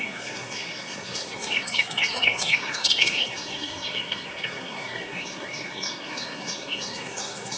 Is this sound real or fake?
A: fake